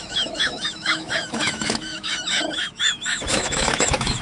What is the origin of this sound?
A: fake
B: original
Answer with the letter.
A